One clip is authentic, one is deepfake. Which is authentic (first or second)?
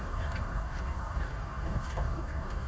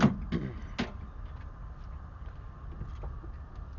second